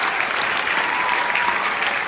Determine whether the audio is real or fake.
real